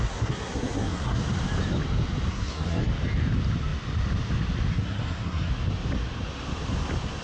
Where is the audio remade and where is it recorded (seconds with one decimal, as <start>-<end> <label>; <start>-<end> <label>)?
0.0-1.2 remade; 1.2-2.3 recorded; 2.3-2.9 remade; 2.9-4.7 recorded; 4.7-5.5 remade; 5.5-7.2 recorded